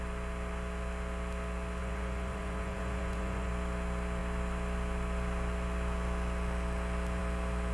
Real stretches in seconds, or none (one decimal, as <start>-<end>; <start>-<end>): 0.0-1.8; 3.5-7.7